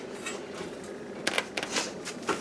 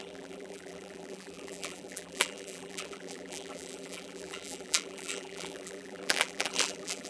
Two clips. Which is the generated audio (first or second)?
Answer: second